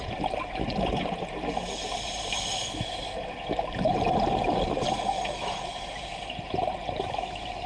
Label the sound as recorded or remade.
remade